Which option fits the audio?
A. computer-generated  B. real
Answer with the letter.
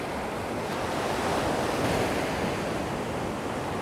A